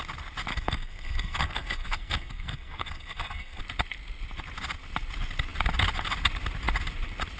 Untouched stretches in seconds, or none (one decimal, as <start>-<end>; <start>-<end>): 0.0-0.5; 3.6-7.4